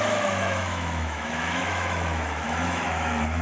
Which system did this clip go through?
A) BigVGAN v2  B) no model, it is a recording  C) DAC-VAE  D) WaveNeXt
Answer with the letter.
C